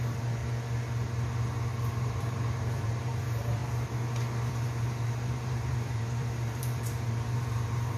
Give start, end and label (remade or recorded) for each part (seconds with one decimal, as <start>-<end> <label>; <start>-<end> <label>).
0.0-0.4 remade; 0.4-1.9 recorded; 1.9-3.6 remade; 3.6-4.5 recorded; 4.5-8.0 remade

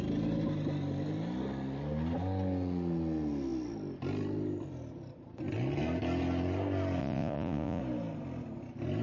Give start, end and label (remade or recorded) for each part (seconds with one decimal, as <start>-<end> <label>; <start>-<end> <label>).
0.0-7.0 recorded; 7.0-7.8 remade; 7.8-9.0 recorded

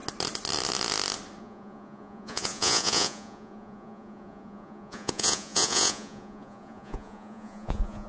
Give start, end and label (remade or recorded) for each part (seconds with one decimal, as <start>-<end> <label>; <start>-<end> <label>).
0.0-1.4 recorded; 1.4-8.1 remade